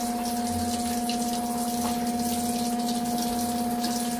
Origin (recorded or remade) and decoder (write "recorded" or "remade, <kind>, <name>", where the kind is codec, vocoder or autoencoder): recorded